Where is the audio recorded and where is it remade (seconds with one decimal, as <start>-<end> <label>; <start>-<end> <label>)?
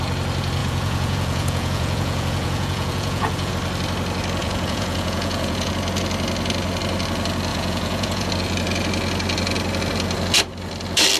0.0-0.6 recorded; 0.6-3.5 remade; 3.5-4.4 recorded; 4.4-5.7 remade; 5.7-7.5 recorded; 7.5-8.3 remade; 8.3-11.2 recorded